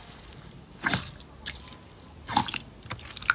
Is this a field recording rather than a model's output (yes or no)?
yes